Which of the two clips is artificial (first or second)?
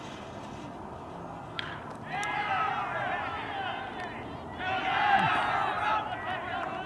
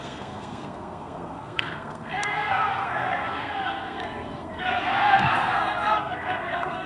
second